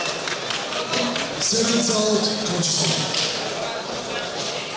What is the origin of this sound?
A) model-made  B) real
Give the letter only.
B